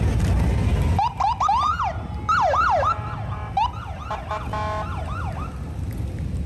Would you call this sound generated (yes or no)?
no